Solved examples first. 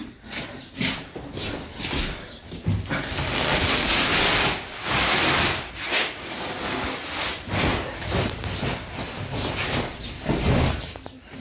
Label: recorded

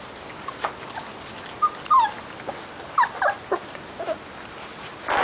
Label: recorded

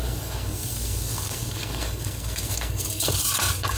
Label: remade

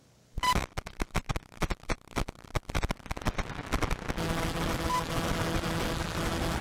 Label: recorded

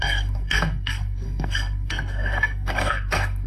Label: remade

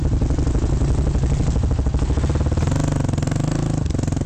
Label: recorded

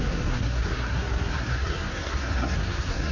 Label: remade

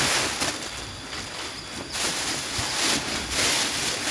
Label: recorded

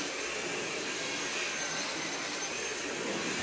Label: recorded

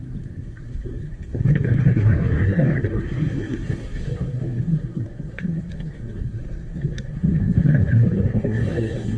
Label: remade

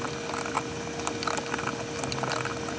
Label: recorded